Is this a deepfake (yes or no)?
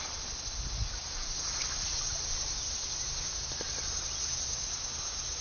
no